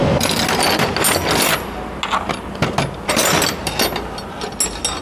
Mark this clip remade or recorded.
recorded